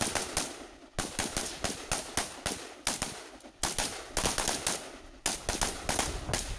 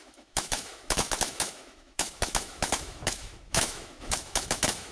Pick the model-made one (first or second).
second